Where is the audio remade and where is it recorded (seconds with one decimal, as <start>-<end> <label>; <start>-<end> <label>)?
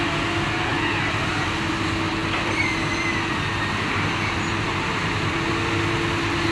0.0-2.2 recorded; 2.2-3.1 remade; 3.1-6.5 recorded